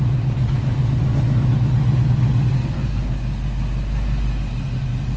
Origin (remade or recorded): recorded